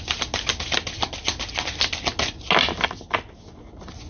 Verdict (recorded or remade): recorded